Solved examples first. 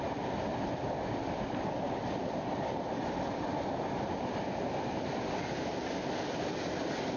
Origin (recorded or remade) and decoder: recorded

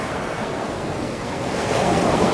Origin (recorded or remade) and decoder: remade, codec, SNAC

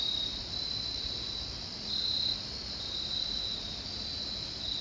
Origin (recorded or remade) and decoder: recorded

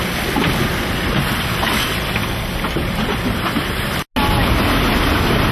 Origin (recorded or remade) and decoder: recorded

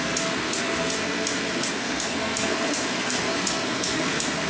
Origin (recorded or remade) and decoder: remade, codec, SNAC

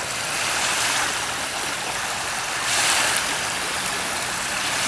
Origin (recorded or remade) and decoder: remade, vocoder, BigVGAN v2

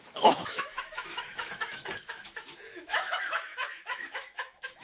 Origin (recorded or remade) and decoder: remade, autoencoder, DAC-VAE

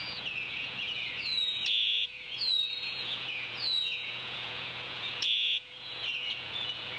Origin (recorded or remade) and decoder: remade, vocoder, Vocos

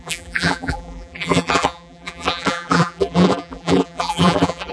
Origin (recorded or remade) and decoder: remade, vocoder, BigVGAN v2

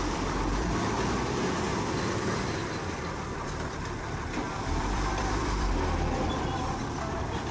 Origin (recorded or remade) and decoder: remade, vocoder, BigVGAN v2